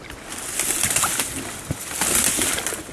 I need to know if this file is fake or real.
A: real